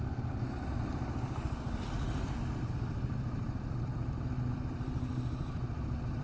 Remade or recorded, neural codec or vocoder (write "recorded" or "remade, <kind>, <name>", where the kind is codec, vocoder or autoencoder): remade, vocoder, BigVGAN v2